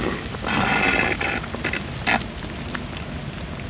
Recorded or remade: recorded